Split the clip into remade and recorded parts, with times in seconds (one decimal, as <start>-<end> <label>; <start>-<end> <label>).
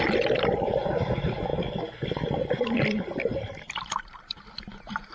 0.0-1.5 recorded; 1.5-4.6 remade; 4.6-5.1 recorded